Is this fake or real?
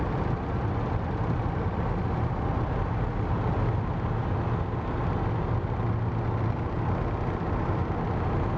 real